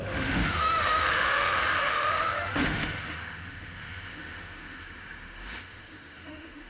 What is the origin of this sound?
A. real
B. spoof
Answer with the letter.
B